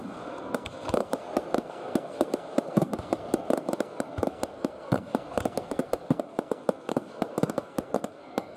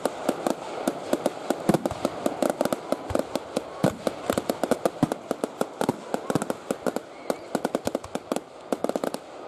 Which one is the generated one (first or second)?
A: first